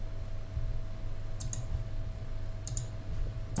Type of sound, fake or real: real